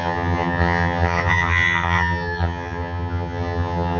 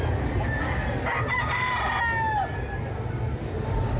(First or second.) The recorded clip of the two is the second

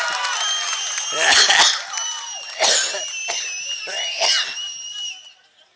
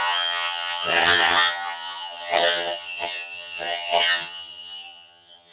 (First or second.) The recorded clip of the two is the first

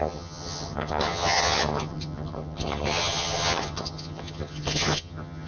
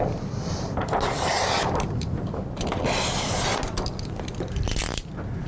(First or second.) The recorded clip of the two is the second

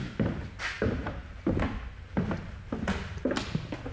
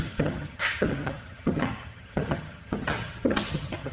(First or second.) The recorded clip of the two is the first